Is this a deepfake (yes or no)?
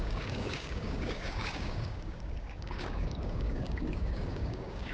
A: yes